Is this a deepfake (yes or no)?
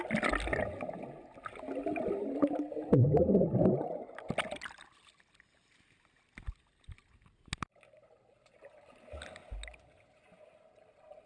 no